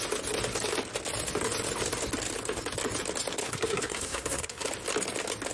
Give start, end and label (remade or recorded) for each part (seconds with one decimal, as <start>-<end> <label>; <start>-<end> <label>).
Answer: 0.0-3.4 recorded; 3.4-4.7 remade; 4.7-5.5 recorded